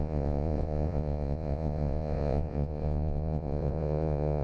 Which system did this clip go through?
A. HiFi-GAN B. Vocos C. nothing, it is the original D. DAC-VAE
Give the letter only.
B